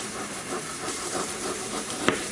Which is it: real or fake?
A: fake